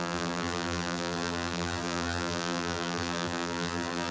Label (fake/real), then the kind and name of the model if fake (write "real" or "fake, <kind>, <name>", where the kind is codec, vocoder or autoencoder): fake, vocoder, BigVGAN v2